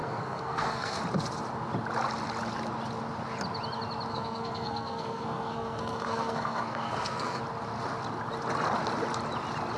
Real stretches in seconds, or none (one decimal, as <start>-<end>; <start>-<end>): 1.0-4.1; 7.4-9.8